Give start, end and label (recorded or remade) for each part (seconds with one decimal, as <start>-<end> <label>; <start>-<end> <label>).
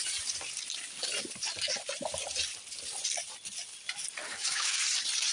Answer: 0.0-4.3 recorded; 4.3-4.8 remade; 4.8-5.3 recorded